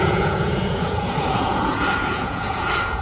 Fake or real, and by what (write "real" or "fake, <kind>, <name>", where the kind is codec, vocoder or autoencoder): fake, vocoder, Vocos